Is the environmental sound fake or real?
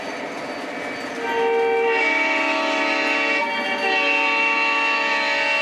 real